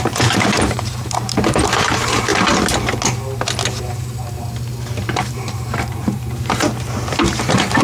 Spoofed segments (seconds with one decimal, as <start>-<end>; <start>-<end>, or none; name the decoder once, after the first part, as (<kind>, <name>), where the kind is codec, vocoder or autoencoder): 0.0-2.3 (vocoder, BigVGAN v2); 3.8-7.8